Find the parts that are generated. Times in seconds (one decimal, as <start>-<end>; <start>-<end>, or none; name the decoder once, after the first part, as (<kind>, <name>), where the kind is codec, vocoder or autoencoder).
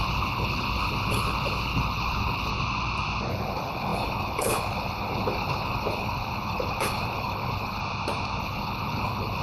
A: 0.0-2.5 (codec, HILCodec); 3.3-7.8; 8.4-9.4